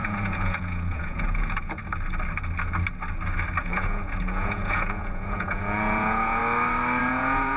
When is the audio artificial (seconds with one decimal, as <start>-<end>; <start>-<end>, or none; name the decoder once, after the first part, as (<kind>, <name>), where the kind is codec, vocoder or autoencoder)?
0.0-1.8 (vocoder, Vocos); 3.6-6.4; 7.0-7.6